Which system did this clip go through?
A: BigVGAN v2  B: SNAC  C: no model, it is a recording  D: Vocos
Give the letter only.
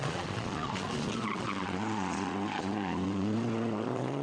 D